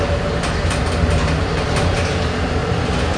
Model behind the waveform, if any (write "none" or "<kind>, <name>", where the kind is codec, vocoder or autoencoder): none